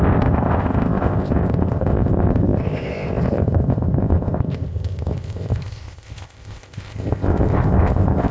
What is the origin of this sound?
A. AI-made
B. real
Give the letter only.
A